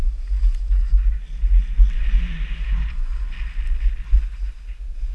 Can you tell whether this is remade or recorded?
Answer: recorded